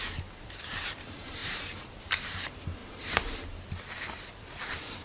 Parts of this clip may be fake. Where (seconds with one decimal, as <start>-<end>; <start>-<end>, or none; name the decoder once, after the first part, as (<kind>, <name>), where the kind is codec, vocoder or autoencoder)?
0.0-2.8 (vocoder, BigVGAN v2); 4.4-5.0